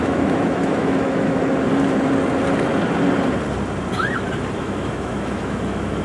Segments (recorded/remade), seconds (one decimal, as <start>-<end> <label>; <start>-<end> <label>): 0.0-1.4 remade; 1.4-4.6 recorded; 4.6-6.0 remade